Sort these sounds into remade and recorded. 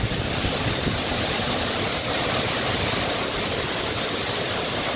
remade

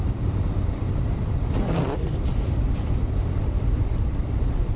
remade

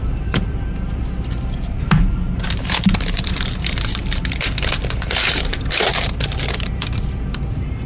remade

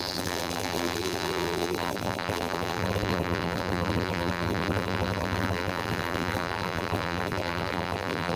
remade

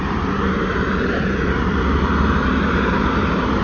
remade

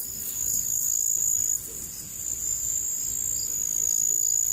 recorded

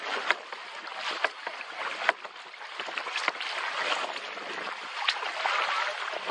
recorded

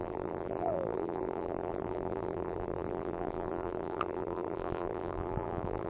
remade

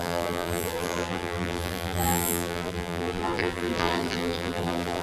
remade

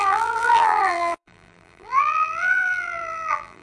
remade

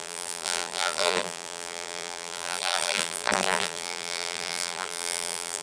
remade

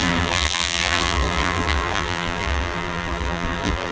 remade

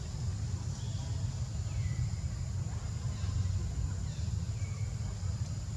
recorded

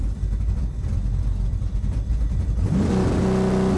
remade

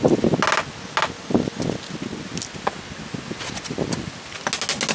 recorded